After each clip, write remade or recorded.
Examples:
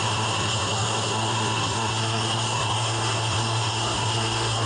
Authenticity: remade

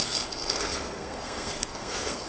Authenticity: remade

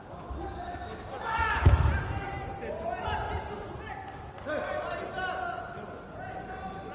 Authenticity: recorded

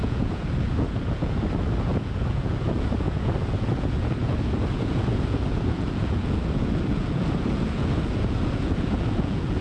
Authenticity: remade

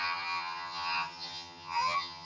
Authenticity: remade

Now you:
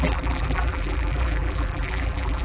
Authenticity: remade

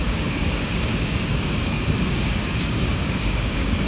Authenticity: remade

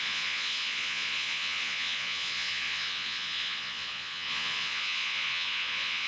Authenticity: remade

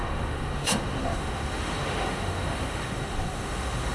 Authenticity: remade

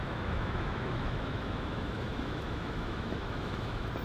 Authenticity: remade